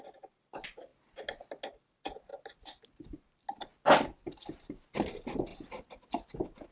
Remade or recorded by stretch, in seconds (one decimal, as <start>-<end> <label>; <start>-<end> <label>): 0.0-6.7 recorded